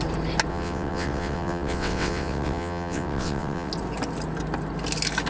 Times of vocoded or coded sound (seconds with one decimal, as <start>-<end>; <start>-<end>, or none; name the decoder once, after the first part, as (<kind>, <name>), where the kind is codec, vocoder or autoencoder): 0.5-3.7 (vocoder, WaveNeXt)